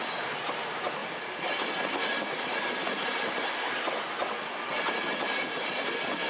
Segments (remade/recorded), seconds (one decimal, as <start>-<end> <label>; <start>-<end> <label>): 0.0-6.3 recorded